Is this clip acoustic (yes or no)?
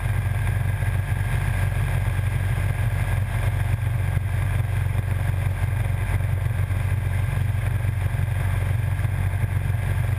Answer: yes